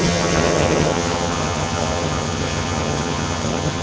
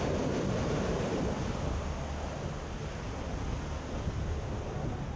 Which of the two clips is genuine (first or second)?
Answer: second